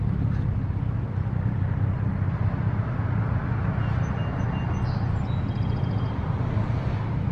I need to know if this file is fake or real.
real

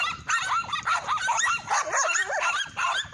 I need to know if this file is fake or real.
fake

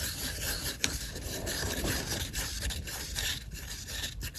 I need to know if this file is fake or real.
fake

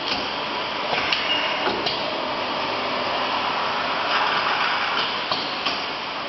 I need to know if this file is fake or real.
real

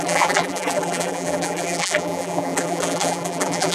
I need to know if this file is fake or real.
fake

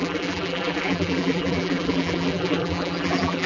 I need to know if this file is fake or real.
fake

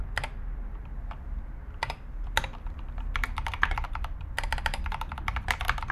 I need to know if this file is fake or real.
fake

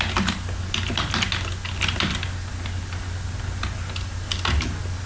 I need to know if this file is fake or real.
real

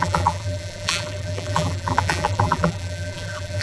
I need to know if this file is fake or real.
fake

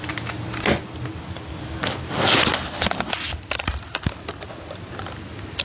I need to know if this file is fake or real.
real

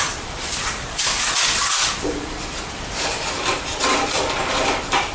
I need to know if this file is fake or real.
fake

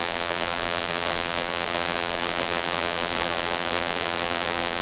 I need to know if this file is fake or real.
fake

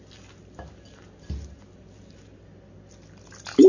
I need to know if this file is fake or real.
real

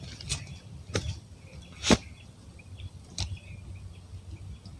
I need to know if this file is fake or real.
real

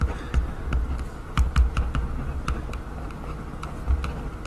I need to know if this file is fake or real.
real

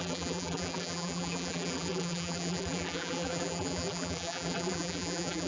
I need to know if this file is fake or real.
fake